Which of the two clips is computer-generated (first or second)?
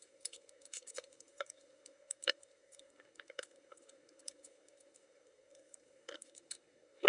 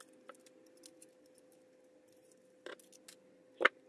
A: first